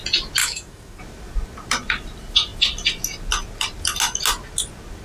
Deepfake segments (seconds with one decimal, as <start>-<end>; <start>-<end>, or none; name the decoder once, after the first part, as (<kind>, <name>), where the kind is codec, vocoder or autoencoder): 0.4-1.0 (autoencoder, DAC-VAE)